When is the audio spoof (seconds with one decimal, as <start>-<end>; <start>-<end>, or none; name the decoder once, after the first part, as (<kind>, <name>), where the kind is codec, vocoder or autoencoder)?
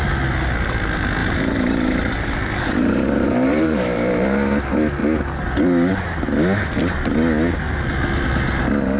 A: 1.2-4.6 (vocoder, BigVGAN v2)